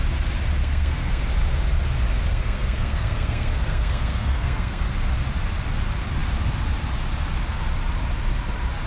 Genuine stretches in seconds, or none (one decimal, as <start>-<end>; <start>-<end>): 0.0-0.6; 1.2-2.3; 4.8-8.9